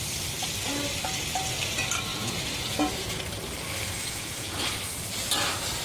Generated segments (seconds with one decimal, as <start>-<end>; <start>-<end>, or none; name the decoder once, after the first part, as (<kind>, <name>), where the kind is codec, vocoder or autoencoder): 2.1-3.2 (vocoder, Vocos); 4.0-4.8